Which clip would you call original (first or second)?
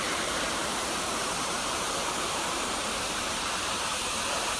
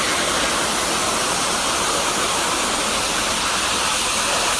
second